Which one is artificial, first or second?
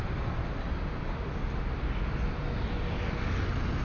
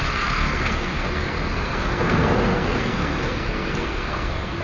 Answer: second